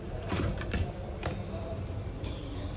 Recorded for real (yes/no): no